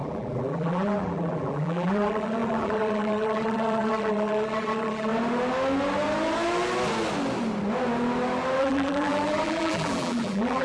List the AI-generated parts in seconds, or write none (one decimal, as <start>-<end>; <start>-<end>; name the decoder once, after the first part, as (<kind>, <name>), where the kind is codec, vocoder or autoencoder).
0.0-5.1 (vocoder, BigVGAN v2); 8.6-10.6